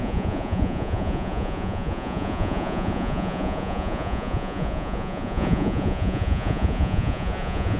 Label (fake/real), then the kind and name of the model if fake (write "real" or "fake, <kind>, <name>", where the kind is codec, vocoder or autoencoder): fake, vocoder, Vocos